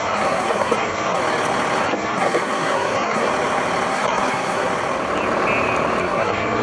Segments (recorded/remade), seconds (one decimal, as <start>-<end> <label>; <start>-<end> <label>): 0.0-1.2 remade; 1.2-1.8 recorded; 1.8-3.3 remade; 3.3-3.9 recorded; 3.9-4.7 remade; 4.7-6.0 recorded; 6.0-6.6 remade